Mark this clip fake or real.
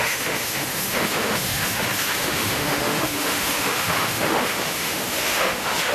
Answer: fake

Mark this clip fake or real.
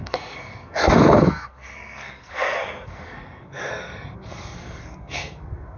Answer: fake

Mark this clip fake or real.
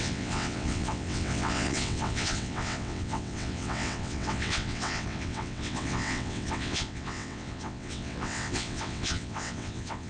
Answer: fake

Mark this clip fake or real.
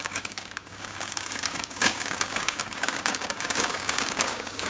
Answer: fake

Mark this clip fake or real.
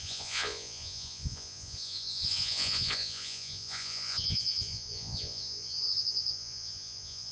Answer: fake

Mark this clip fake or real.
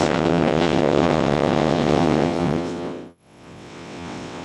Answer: fake